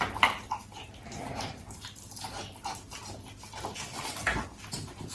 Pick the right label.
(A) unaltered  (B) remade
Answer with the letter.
A